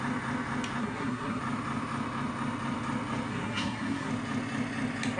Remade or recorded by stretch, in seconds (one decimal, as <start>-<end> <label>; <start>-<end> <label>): 0.0-0.8 recorded; 0.8-1.4 remade; 1.4-3.3 recorded; 3.3-4.1 remade; 4.1-5.2 recorded